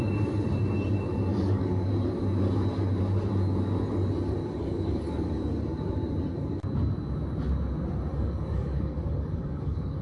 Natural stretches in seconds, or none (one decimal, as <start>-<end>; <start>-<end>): 0.0-1.3; 1.9-4.4; 5.4-8.1